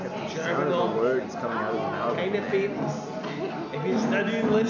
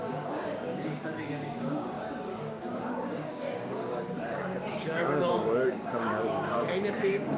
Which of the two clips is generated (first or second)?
second